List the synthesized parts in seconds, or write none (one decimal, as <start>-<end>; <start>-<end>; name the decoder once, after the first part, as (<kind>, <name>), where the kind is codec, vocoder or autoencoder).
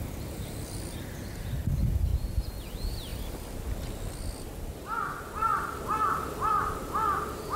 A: 3.1-3.8 (vocoder, BigVGAN v2); 5.5-6.5